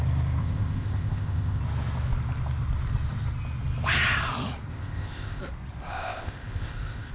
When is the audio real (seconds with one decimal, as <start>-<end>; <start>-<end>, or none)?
0.0-0.4; 1.6-4.7; 5.4-5.9